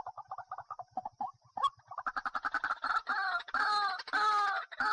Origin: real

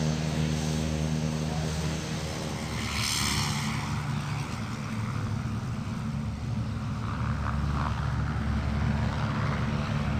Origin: real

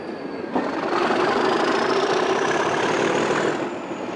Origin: real